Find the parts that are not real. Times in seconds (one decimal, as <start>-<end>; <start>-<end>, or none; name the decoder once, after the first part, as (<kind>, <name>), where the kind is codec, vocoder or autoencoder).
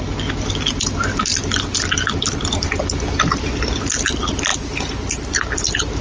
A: none